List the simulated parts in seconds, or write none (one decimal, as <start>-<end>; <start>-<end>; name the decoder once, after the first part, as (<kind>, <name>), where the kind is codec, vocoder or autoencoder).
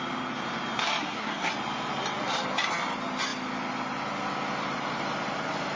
1.0-1.5 (codec, SNAC)